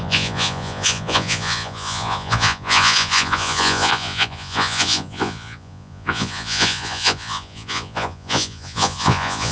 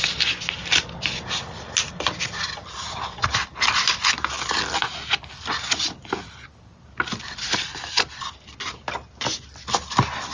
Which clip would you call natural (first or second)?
second